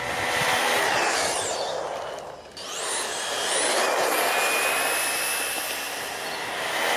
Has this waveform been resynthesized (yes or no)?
no